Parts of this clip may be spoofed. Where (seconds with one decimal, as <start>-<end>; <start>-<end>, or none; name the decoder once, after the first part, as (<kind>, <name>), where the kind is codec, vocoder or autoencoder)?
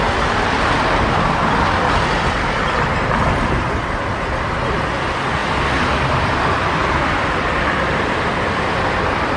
0.0-5.4 (vocoder, BigVGAN v2); 5.9-9.4